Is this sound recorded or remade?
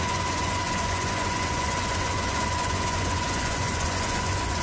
remade